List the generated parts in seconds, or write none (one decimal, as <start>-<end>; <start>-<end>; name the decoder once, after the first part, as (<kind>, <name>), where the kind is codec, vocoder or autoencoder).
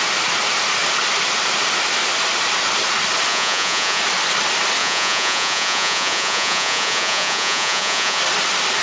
3.3-4.0 (vocoder, Vocos); 4.8-8.2